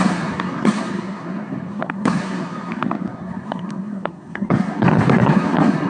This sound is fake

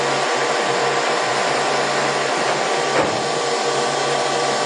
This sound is real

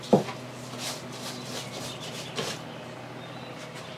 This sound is real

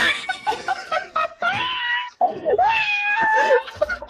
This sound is fake